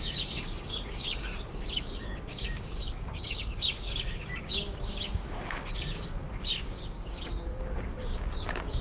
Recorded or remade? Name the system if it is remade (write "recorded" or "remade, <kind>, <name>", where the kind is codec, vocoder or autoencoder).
remade, codec, DAC